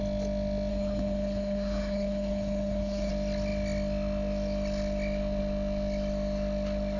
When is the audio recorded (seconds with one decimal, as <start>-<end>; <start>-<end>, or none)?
0.0-0.7; 3.1-7.0